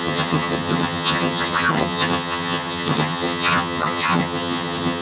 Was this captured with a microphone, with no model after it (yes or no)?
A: no